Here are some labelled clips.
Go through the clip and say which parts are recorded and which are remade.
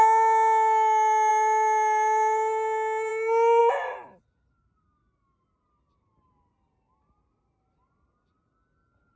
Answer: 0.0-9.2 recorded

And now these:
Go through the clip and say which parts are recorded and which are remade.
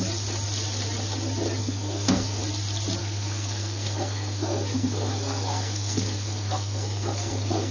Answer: 0.0-1.6 recorded; 1.6-2.4 remade; 2.4-3.0 recorded; 3.0-7.7 remade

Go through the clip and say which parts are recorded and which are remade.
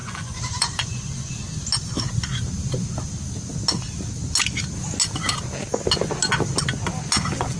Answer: 0.0-1.3 remade; 1.3-7.6 recorded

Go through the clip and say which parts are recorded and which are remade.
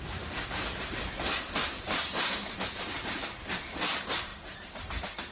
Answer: 0.0-1.6 recorded; 1.6-3.6 remade; 3.6-4.3 recorded; 4.3-5.3 remade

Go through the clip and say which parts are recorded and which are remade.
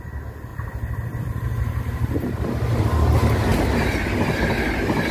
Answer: 0.0-0.5 recorded; 0.5-1.8 remade; 1.8-5.1 recorded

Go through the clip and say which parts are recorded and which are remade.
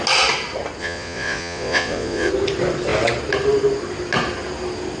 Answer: 0.0-0.8 recorded; 0.8-2.3 remade; 2.3-5.0 recorded